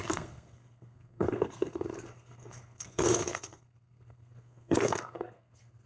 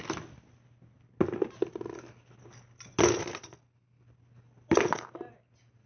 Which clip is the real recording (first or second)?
second